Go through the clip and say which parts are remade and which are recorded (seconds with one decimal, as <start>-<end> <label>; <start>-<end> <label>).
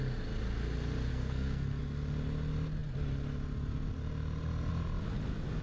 0.0-1.1 recorded; 1.1-1.8 remade; 1.8-5.6 recorded